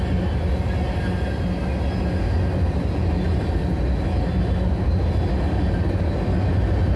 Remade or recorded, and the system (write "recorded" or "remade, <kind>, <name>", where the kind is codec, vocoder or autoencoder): recorded